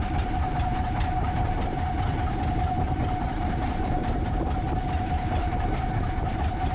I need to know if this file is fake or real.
fake